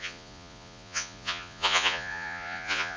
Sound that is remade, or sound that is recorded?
remade